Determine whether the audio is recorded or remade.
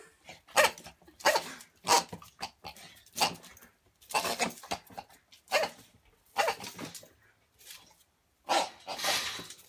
recorded